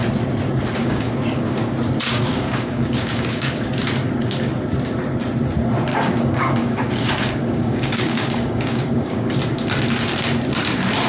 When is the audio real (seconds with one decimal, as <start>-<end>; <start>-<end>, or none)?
0.0-0.8; 1.7-2.1; 3.7-5.9; 9.4-11.1